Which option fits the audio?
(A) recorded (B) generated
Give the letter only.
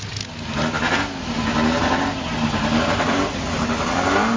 A